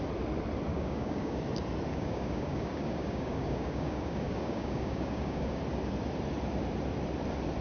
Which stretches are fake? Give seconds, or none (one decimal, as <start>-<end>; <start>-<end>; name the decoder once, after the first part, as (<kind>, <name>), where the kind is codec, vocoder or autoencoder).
0.7-1.4 (codec, DAC); 1.9-5.6